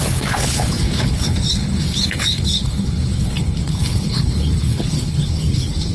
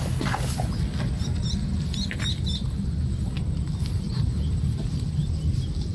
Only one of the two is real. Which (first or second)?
second